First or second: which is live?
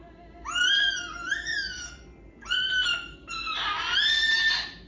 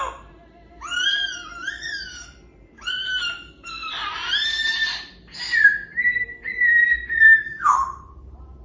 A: first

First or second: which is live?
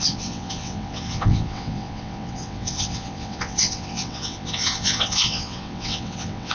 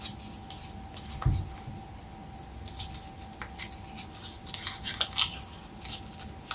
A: second